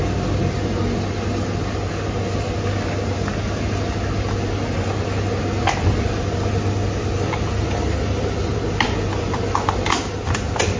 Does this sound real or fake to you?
real